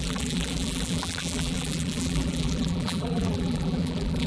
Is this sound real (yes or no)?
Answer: no